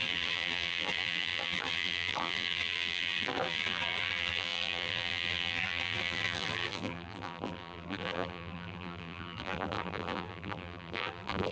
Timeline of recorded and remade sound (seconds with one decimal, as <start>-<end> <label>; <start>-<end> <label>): 0.0-11.5 remade